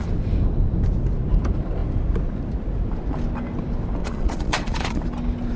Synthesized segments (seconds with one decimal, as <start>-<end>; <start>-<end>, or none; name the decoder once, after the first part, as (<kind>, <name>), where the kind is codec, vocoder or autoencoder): 4.0-5.0 (vocoder, Vocos)